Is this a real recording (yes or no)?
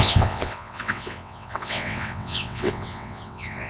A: no